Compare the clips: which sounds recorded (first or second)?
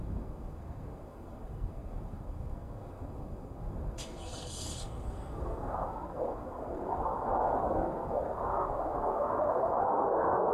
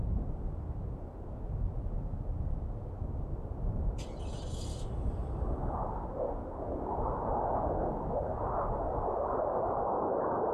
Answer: second